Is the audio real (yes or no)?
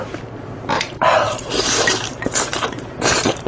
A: no